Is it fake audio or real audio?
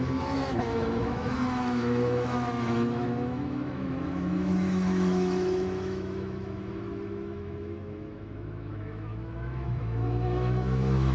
fake